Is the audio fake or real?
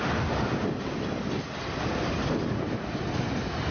real